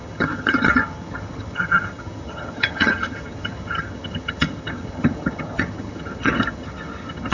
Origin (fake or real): fake